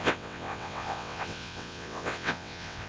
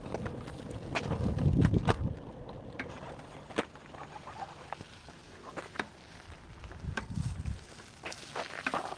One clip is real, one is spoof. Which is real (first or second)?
second